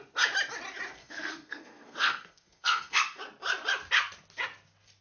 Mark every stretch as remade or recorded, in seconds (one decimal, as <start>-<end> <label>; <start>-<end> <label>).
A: 0.0-1.0 recorded; 1.0-3.2 remade; 3.2-5.0 recorded